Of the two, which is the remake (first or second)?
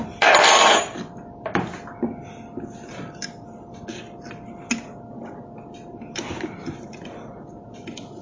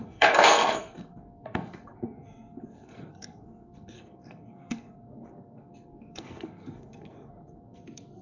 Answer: second